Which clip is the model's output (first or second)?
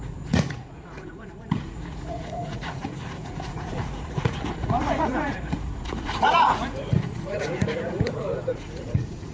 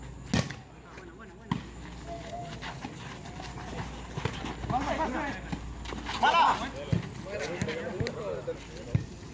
first